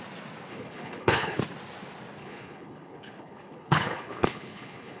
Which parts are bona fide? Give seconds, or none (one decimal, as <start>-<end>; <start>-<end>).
0.0-0.5; 1.4-2.2